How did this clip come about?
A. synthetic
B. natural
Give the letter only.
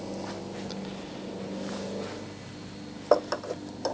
B